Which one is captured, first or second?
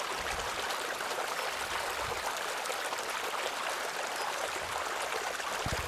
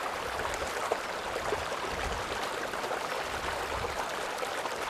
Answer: first